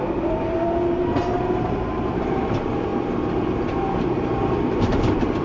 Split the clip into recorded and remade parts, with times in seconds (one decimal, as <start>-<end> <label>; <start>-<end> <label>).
0.0-2.9 remade; 2.9-3.8 recorded; 3.8-5.4 remade